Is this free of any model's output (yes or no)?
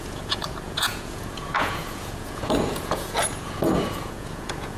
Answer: no